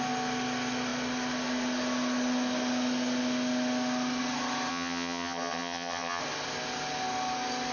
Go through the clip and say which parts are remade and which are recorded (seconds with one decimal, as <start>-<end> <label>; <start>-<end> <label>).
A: 0.0-4.7 recorded; 4.7-6.2 remade; 6.2-7.7 recorded